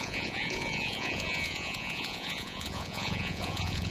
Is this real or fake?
fake